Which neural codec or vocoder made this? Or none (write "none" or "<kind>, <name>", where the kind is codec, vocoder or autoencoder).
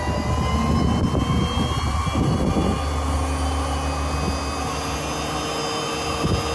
none